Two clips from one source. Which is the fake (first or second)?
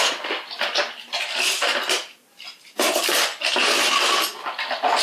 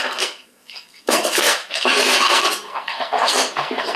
second